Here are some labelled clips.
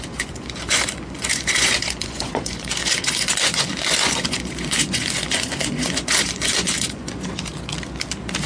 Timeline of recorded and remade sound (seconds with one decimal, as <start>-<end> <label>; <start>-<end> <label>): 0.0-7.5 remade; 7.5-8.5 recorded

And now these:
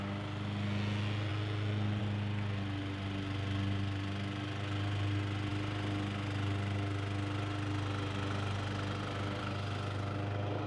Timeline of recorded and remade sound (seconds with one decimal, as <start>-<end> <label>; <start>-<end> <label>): 0.0-10.7 recorded

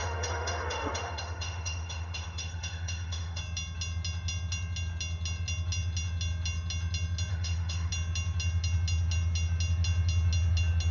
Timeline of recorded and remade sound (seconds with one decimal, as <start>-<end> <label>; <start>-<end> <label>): 0.0-3.4 remade; 3.4-7.3 recorded; 7.3-7.9 remade; 7.9-10.9 recorded

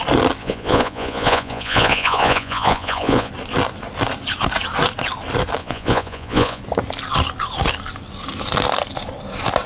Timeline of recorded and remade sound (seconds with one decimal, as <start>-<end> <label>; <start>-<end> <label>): 0.0-0.4 recorded; 0.4-3.3 remade; 3.3-5.6 recorded; 5.6-6.6 remade; 6.6-9.7 recorded

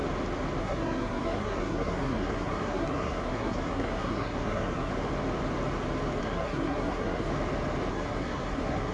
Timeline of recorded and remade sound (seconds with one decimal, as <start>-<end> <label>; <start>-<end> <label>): 0.0-0.6 recorded; 0.6-4.9 remade; 4.9-6.2 recorded; 6.2-7.3 remade; 7.3-7.9 recorded; 7.9-8.9 remade

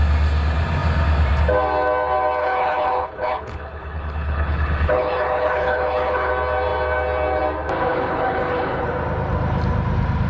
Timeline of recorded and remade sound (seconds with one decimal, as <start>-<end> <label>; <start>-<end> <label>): 0.0-2.4 recorded; 2.4-6.3 remade; 6.3-7.9 recorded; 7.9-8.9 remade; 8.9-10.3 recorded

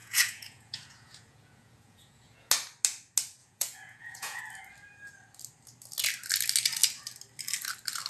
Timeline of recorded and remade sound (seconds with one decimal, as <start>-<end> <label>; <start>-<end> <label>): 0.0-2.5 remade; 2.5-3.4 recorded; 3.4-4.4 remade; 4.4-8.1 recorded